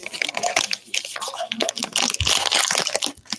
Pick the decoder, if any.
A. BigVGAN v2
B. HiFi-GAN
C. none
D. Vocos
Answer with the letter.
C